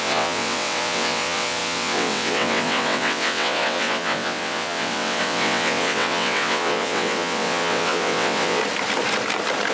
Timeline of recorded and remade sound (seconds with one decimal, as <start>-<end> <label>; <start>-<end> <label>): 0.0-8.6 remade; 8.6-9.7 recorded